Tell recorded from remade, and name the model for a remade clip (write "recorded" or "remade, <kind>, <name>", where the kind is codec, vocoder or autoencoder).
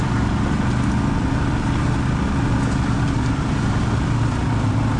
recorded